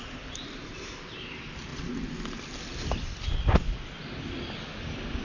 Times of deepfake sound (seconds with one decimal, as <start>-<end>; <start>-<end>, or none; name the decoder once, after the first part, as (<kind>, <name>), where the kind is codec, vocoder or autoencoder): none